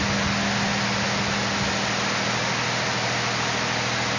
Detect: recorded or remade recorded